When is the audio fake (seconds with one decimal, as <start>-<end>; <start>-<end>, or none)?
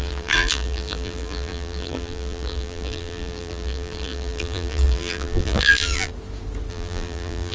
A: 0.0-6.1; 6.7-7.5